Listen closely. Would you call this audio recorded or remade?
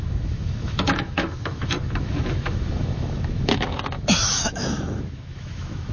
remade